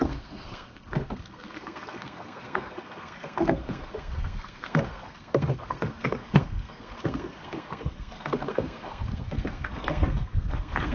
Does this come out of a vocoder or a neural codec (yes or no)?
yes